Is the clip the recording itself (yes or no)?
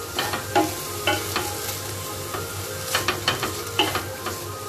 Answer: yes